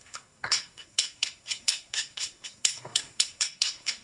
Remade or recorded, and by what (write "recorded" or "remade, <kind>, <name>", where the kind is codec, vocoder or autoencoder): remade, codec, SNAC